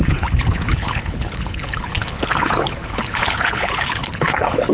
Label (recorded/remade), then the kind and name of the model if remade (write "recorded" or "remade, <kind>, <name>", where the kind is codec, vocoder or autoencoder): remade, codec, HILCodec